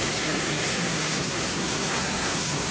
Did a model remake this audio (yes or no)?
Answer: yes